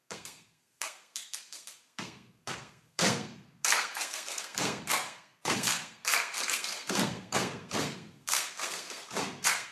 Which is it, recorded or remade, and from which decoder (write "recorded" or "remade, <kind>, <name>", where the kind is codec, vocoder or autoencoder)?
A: remade, codec, SNAC